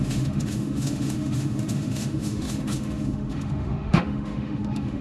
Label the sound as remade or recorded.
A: remade